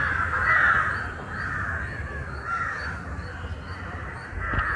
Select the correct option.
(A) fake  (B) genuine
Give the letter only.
B